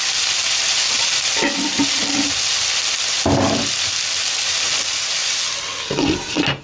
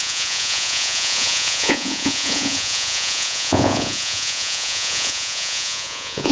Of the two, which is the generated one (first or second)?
second